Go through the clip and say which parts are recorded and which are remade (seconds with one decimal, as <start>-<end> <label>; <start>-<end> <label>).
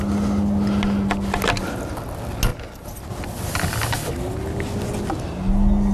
0.0-5.9 recorded